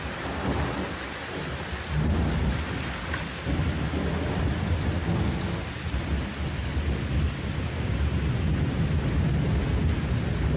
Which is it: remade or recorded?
recorded